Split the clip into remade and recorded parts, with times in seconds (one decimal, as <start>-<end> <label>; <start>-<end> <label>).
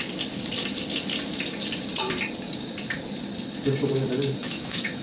0.0-4.4 recorded; 4.4-5.0 remade